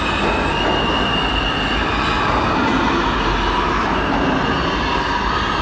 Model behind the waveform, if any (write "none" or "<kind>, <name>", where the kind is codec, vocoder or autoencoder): none